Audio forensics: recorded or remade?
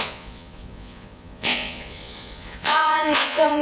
remade